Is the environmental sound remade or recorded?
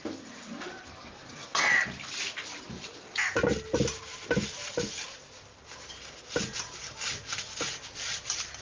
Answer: recorded